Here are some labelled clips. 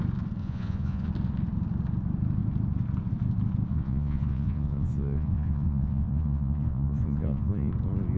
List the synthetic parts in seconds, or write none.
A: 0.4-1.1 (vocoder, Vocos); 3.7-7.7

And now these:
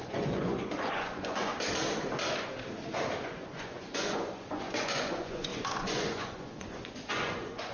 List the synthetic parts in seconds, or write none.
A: 0.0-1.5 (vocoder, Vocos); 3.2-7.7

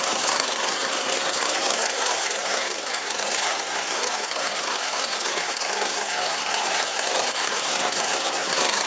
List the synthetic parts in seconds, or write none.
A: 0.0-8.9 (codec, SNAC)

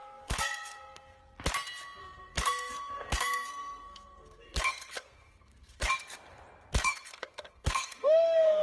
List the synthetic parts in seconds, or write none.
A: 0.0-1.2 (codec, SNAC); 2.0-5.9; 6.8-8.6

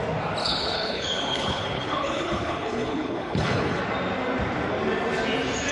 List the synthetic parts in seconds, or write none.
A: 0.4-3.8 (codec, HILCodec)

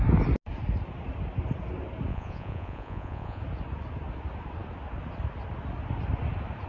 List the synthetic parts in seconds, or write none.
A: 2.1-3.4 (vocoder, Vocos)

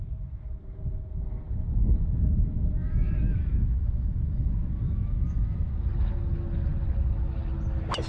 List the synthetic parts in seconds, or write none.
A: 2.8-5.7 (autoencoder, DAC-VAE)

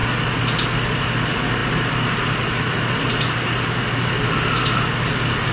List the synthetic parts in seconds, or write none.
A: none